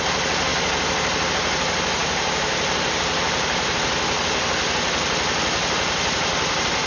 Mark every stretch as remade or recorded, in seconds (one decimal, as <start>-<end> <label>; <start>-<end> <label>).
0.0-2.0 recorded; 2.0-3.8 remade; 3.8-6.9 recorded